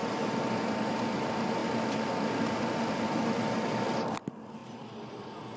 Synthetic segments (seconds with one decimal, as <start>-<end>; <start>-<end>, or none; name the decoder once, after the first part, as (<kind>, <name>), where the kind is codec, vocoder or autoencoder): none